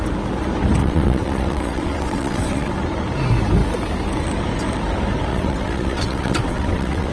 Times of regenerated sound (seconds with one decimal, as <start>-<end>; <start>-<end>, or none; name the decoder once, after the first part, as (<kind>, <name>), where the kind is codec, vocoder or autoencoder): 0.8-2.7 (vocoder, WaveNeXt); 5.3-7.1